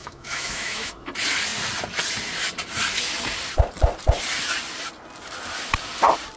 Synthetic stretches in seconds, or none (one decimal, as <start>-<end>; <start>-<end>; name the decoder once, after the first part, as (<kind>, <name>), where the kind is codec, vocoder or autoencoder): 0.0-1.1 (autoencoder, DAC-VAE)